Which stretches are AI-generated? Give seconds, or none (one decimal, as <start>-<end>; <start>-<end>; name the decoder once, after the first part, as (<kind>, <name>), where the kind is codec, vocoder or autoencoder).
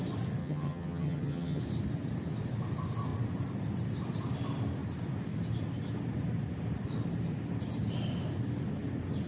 0.4-1.6 (vocoder, HiFi-GAN)